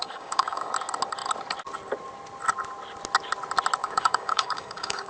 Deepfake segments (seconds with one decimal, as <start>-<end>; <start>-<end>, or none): 0.0-0.7; 3.8-5.1

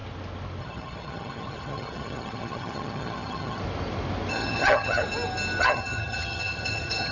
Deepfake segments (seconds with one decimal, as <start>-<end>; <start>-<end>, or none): 0.6-3.6; 4.3-5.0; 5.6-7.1

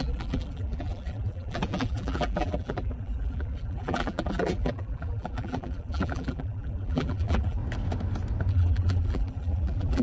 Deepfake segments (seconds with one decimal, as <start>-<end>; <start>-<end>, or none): 0.0-7.6; 8.5-10.0

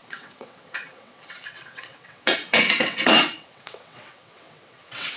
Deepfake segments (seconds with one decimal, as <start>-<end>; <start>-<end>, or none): 0.0-5.2